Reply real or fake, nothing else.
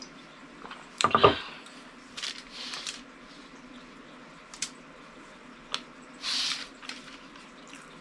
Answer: real